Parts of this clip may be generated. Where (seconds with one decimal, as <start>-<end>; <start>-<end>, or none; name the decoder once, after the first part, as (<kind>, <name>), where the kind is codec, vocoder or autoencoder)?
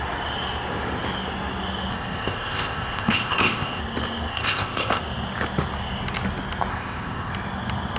1.9-3.8 (codec, ZipCodec); 4.3-5.0; 6.7-7.3